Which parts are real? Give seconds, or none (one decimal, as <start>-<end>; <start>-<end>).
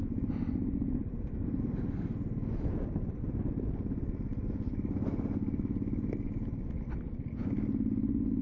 0.0-8.4